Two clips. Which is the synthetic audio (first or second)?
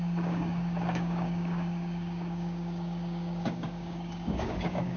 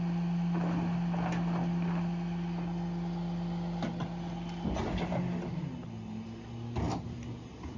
first